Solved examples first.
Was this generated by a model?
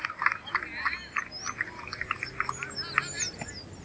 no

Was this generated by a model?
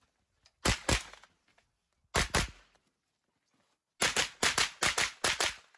no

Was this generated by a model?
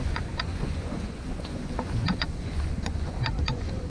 yes